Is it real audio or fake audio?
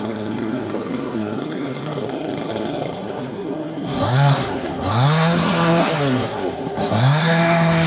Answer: fake